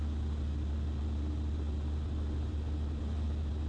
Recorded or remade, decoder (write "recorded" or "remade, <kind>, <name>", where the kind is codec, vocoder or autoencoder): recorded